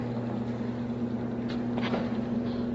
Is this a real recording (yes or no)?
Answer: yes